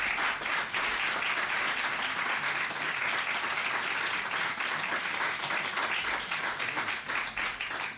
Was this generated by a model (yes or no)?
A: no